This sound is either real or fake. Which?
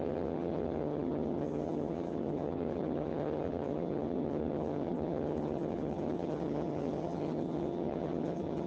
fake